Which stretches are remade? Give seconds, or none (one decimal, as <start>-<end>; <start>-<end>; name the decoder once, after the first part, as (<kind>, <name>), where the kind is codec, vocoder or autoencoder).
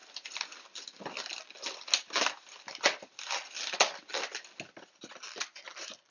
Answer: 0.0-0.6 (vocoder, BigVGAN v2)